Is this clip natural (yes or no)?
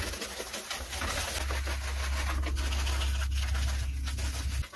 yes